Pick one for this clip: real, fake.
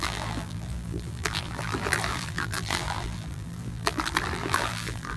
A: fake